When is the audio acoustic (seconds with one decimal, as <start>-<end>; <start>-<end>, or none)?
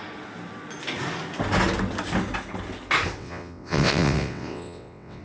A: 0.0-3.2